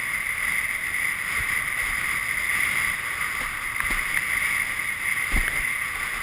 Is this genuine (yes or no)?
yes